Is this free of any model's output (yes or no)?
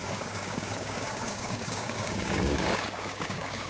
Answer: no